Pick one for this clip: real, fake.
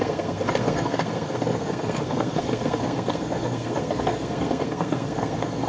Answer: fake